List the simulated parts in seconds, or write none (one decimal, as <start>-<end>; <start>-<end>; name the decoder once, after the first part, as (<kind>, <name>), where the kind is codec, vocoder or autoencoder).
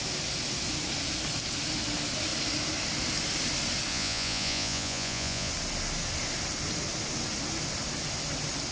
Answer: 3.9-5.5 (vocoder, Vocos)